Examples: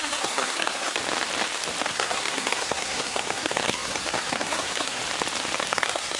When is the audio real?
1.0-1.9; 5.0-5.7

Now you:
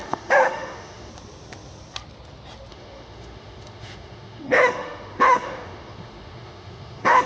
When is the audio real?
1.1-2.7

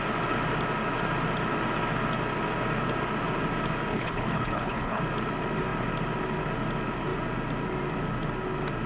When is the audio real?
0.0-3.9; 5.0-8.9

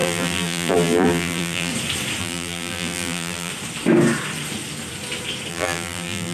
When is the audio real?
1.7-2.2; 3.5-5.5

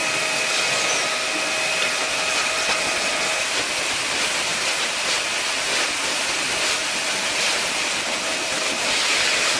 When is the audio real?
0.0-9.6

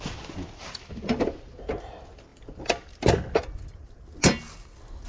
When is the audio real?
0.0-5.1

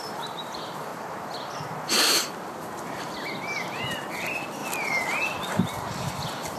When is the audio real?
0.9-1.6; 4.6-5.6